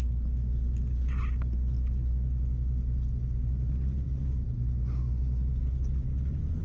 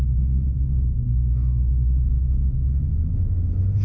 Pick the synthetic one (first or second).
second